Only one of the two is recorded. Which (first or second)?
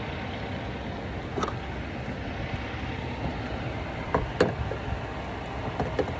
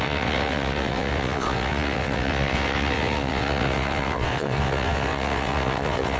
first